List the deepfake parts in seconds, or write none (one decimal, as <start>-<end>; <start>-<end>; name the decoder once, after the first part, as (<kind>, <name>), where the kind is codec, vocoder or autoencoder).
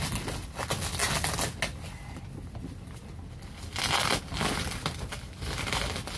none